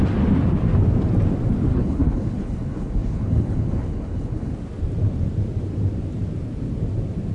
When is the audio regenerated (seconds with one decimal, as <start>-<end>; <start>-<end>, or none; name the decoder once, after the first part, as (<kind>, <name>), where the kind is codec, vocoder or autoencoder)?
1.7-4.5 (codec, HILCodec)